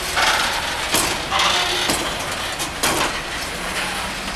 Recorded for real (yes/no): yes